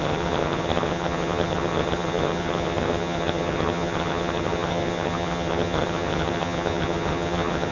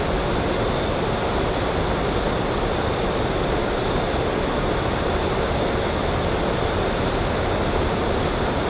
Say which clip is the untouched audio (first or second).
second